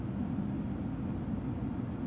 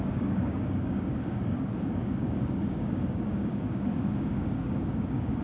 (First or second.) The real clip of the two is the first